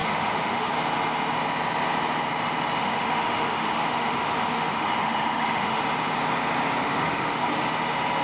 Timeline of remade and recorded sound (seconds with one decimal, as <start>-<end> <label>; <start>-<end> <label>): 0.0-0.7 remade; 0.7-2.8 recorded; 2.8-5.8 remade; 5.8-6.8 recorded; 6.8-7.5 remade; 7.5-8.2 recorded